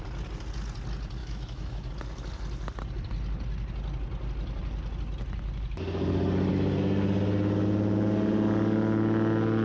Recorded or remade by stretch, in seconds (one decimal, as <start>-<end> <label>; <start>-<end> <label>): 0.0-1.2 recorded; 1.2-1.9 remade; 1.9-9.6 recorded